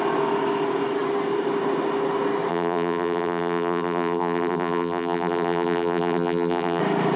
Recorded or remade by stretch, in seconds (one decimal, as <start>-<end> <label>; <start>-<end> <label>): 0.0-2.5 recorded; 2.5-6.8 remade; 6.8-7.2 recorded